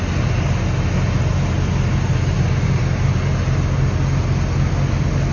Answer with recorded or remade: recorded